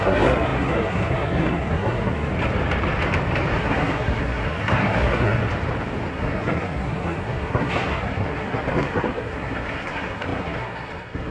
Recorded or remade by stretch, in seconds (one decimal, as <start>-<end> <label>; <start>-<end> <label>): 0.0-2.3 remade; 2.3-3.6 recorded; 3.6-5.4 remade; 5.4-6.1 recorded; 6.1-11.3 remade